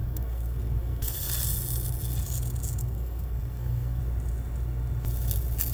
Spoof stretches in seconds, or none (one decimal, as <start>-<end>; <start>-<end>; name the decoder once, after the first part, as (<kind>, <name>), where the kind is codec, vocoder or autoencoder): 0.0-1.3 (codec, SNAC); 2.8-4.0